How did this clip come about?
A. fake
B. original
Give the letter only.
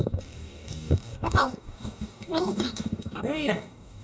A